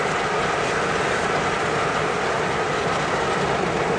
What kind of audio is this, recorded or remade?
recorded